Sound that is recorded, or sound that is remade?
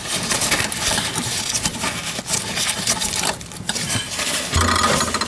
recorded